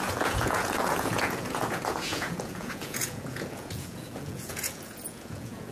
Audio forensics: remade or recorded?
remade